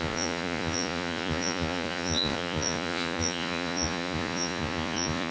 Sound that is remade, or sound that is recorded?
remade